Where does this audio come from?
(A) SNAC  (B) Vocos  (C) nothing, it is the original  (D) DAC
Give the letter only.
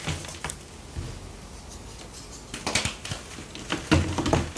C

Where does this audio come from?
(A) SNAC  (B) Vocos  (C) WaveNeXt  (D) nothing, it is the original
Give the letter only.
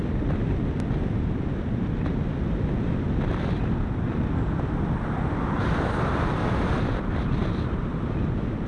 D